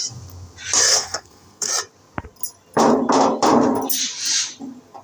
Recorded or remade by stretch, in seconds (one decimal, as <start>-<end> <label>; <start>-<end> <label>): 0.0-0.9 recorded; 0.9-1.7 remade; 1.7-5.0 recorded